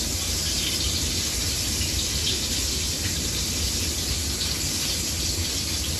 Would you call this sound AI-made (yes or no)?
no